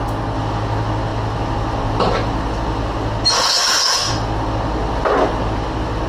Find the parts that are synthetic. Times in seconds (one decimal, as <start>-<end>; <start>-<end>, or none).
none